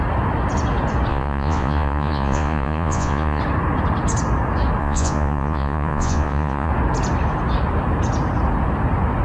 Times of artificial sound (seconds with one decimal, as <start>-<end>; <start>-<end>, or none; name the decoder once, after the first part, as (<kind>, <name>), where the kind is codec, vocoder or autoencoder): 1.1-3.4 (vocoder, Vocos); 4.8-6.7